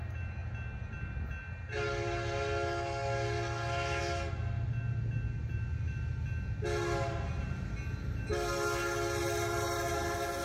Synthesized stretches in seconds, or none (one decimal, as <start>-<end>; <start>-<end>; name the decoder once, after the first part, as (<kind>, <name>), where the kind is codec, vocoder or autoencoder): none